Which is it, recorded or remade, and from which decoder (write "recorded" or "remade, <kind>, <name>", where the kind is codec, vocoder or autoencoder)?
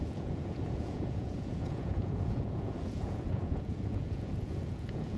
remade, vocoder, Vocos